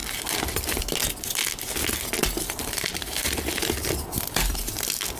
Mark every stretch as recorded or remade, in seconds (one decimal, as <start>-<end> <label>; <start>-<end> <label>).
0.0-5.2 recorded